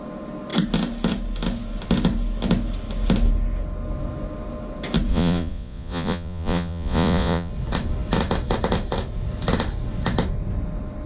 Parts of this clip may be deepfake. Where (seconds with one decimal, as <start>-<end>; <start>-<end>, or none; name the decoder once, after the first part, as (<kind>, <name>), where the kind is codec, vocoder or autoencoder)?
5.1-7.5 (vocoder, Vocos)